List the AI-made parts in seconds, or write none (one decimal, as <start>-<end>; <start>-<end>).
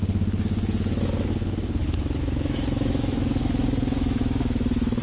1.8-5.0